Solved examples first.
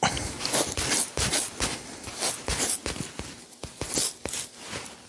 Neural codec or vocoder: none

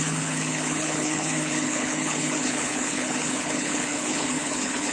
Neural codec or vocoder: codec, HILCodec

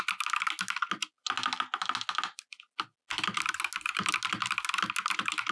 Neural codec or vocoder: none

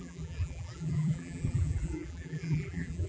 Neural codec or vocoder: vocoder, BigVGAN v2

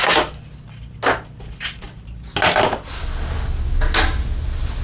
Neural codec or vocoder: none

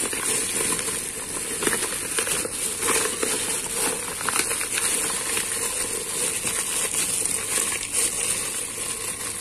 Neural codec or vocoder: none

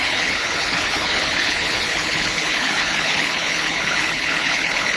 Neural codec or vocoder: codec, HILCodec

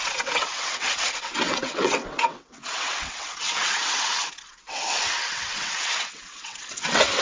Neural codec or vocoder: vocoder, WaveNeXt